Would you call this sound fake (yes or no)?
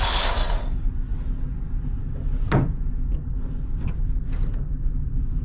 no